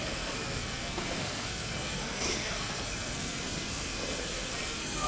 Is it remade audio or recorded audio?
remade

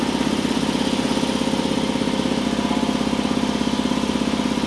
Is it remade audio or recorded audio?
recorded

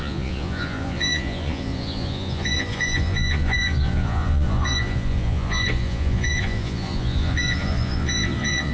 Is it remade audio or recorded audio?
remade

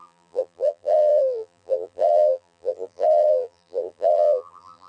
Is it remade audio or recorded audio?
remade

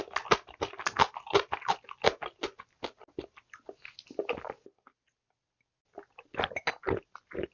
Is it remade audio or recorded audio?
recorded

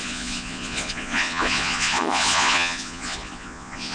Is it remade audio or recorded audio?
remade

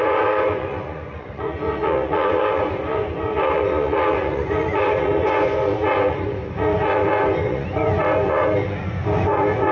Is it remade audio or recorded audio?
remade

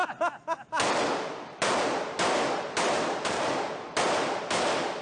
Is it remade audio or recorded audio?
recorded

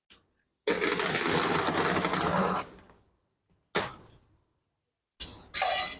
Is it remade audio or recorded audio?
recorded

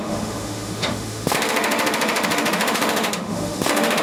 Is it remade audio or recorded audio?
remade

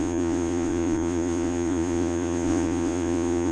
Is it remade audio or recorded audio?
remade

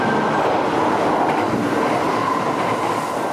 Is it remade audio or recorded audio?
recorded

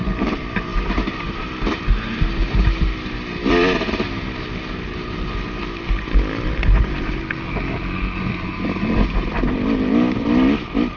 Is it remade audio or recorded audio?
recorded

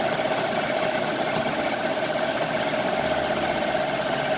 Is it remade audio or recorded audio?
recorded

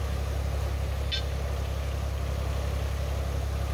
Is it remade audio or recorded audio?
recorded